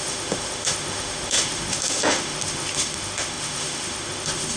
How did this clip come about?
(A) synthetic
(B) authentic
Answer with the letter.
A